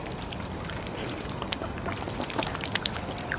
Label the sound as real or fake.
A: fake